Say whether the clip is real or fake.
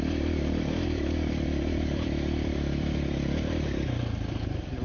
fake